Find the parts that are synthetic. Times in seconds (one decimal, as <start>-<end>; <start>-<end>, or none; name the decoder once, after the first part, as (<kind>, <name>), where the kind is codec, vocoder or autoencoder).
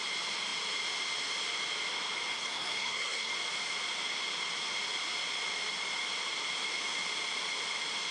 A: 2.3-3.3 (codec, SNAC)